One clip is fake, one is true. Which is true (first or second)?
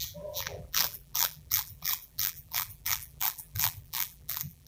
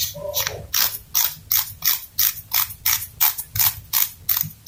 second